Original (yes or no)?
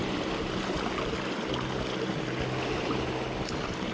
yes